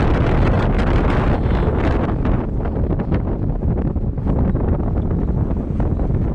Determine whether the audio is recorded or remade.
recorded